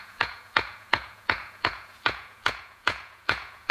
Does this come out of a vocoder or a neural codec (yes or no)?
yes